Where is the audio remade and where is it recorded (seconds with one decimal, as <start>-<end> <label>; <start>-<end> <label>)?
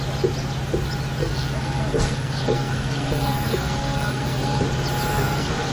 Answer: 0.0-1.2 recorded; 1.2-4.6 remade; 4.6-5.1 recorded; 5.1-5.7 remade